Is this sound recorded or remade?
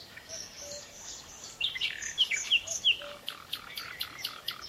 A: remade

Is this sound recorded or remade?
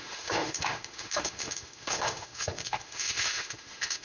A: remade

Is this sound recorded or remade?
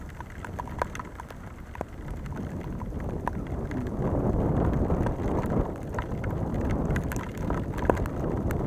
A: remade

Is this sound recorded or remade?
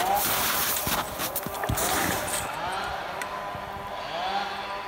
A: recorded